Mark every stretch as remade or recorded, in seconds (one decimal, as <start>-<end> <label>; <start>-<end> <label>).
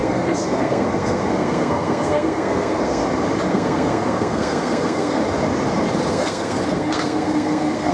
0.0-3.0 remade; 3.0-3.5 recorded; 3.5-5.2 remade; 5.2-6.1 recorded; 6.1-7.9 remade